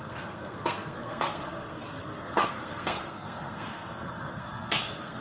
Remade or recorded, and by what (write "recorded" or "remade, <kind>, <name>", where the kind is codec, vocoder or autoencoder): remade, codec, SNAC